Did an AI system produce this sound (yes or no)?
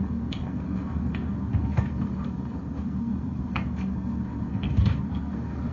yes